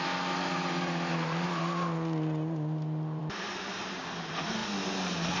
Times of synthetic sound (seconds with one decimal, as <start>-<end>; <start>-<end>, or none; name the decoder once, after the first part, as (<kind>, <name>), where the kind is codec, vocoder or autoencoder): 1.1-1.6 (vocoder, BigVGAN v2); 3.2-4.0